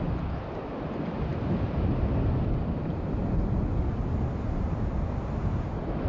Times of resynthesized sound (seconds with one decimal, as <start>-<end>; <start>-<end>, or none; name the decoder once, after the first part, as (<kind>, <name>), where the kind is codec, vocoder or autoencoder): none